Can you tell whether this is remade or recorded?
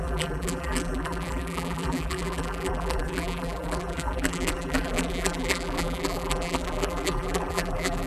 remade